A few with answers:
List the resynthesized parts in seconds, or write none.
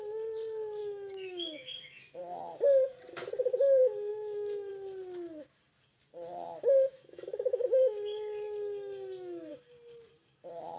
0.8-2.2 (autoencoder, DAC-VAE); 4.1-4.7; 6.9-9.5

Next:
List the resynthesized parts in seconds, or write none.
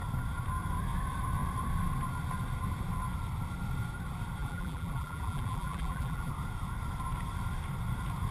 4.4-6.3 (vocoder, BigVGAN v2)